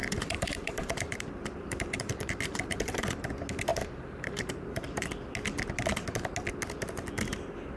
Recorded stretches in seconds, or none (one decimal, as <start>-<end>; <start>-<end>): 3.1-3.7; 5.1-7.8